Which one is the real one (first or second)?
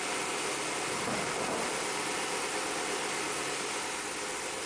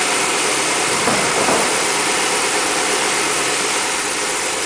first